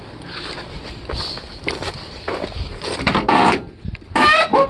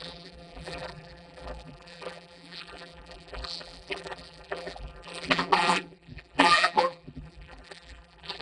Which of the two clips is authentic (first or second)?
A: first